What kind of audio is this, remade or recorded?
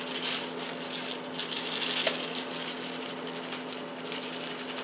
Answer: recorded